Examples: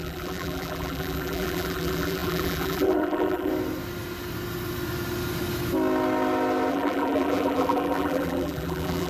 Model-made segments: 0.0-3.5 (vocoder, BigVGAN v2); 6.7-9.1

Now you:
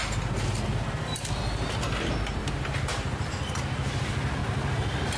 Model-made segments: 2.4-3.3 (vocoder, BigVGAN v2)